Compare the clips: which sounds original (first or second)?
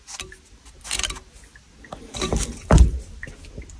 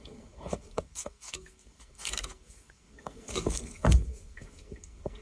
first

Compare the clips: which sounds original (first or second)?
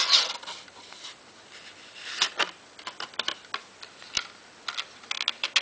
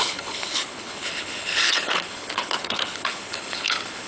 first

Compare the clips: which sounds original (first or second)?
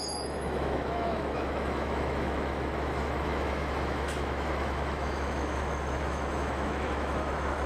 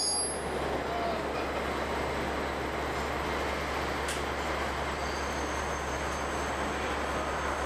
second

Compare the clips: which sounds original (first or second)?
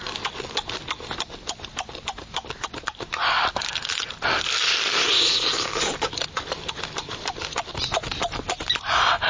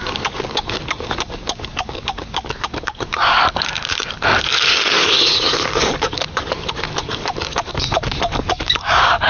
first